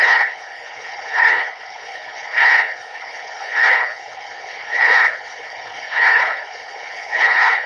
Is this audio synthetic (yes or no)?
yes